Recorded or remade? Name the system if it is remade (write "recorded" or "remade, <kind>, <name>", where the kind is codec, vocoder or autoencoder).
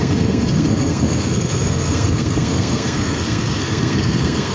remade, codec, SNAC